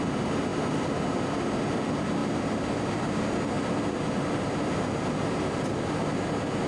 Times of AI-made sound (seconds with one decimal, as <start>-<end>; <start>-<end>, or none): none